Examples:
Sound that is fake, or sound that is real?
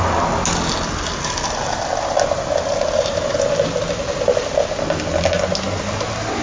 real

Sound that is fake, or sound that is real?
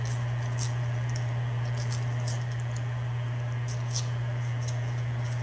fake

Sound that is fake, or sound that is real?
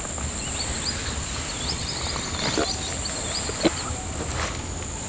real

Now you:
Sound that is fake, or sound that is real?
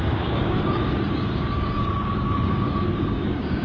fake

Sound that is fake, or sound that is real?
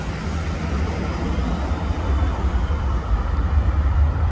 real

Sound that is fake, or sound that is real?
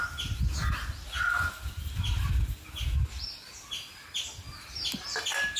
real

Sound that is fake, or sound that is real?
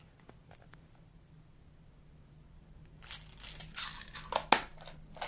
real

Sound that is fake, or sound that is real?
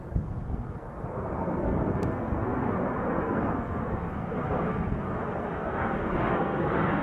fake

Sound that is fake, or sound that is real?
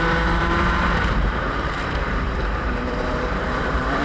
fake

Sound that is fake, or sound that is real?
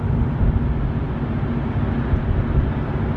real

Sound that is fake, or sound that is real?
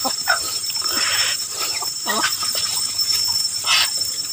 fake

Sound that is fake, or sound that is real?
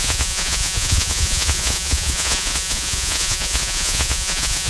fake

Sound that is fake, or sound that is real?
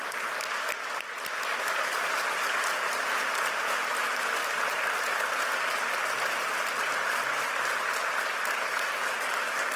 fake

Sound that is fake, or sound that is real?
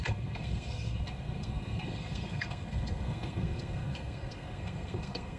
fake